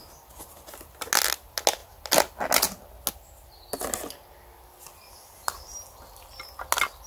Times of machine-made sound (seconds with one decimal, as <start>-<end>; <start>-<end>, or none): none